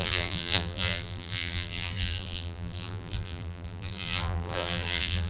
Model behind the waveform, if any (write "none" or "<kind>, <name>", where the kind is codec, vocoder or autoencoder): vocoder, BigVGAN v2